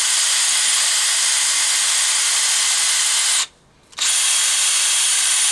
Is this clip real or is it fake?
real